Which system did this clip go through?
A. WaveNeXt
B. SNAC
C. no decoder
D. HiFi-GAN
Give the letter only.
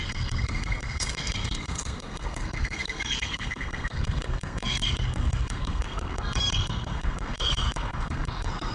B